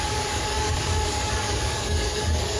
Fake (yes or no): yes